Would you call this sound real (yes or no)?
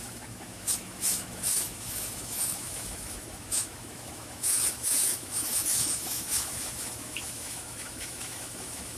no